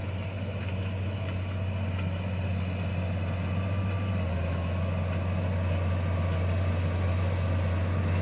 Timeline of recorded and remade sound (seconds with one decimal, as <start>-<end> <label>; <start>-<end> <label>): 0.0-8.2 recorded